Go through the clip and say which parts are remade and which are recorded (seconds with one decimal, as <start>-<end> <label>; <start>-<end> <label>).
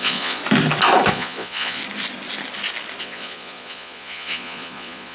0.0-0.4 remade; 0.4-1.1 recorded; 1.1-1.8 remade; 1.8-3.0 recorded; 3.0-5.1 remade